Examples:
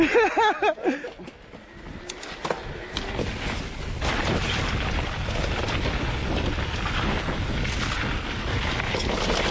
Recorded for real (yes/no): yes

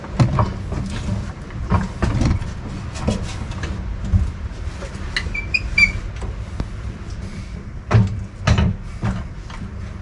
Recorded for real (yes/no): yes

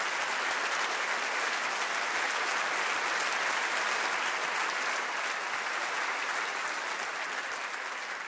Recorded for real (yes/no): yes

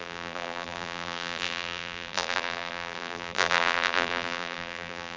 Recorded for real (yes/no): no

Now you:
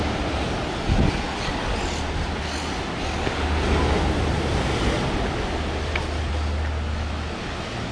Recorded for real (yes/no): yes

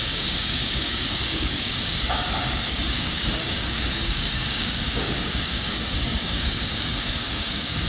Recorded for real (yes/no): no